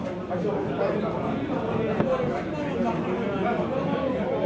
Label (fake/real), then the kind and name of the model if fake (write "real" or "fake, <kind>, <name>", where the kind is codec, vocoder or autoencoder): real